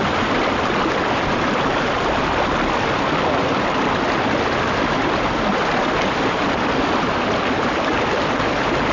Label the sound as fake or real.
real